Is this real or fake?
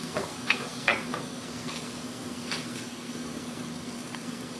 fake